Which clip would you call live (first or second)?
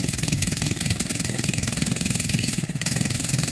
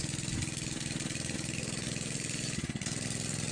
second